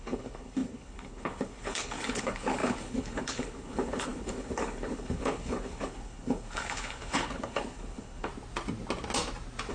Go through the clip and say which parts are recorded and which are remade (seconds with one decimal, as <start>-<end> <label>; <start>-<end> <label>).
0.0-8.3 remade; 8.3-9.7 recorded